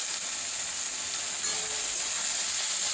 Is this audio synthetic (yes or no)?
no